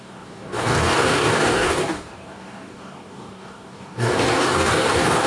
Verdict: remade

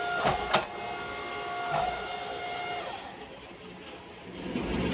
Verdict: recorded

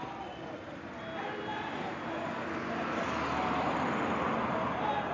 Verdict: recorded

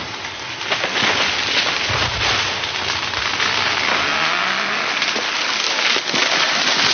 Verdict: recorded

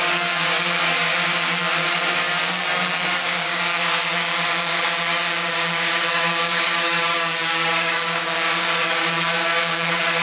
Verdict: remade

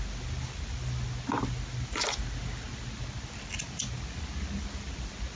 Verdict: recorded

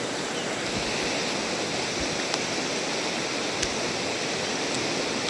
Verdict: recorded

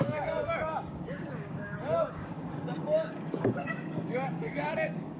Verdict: remade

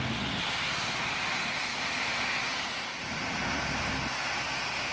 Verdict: recorded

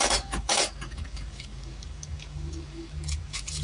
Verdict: remade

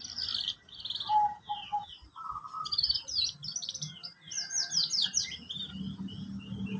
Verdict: recorded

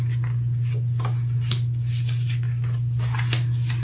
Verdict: recorded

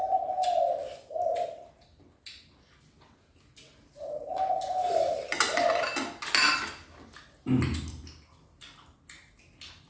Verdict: recorded